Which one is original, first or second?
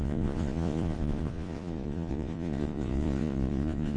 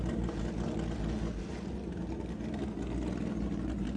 second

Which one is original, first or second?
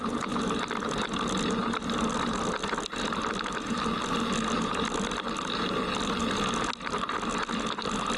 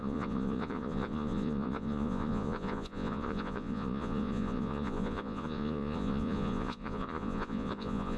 first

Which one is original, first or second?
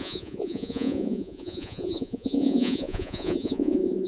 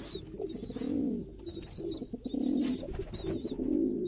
second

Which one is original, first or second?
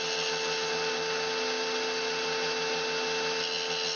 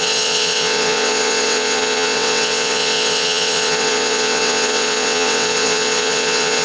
first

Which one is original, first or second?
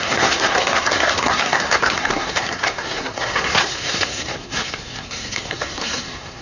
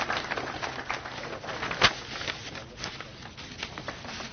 second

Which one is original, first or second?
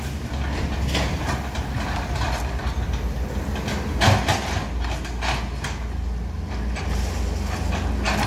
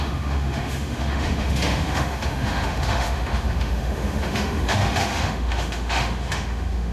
first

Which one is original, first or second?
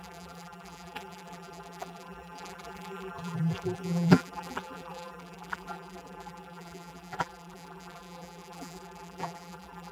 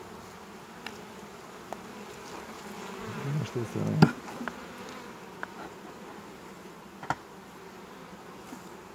second